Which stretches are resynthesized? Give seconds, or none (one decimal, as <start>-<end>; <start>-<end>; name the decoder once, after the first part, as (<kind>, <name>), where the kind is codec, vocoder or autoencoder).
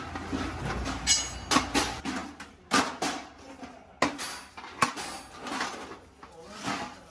none